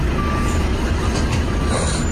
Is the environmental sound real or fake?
real